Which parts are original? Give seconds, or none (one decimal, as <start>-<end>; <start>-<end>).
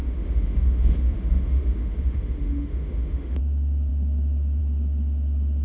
3.4-5.6